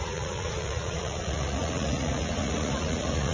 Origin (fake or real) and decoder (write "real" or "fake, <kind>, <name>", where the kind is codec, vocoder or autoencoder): fake, vocoder, Vocos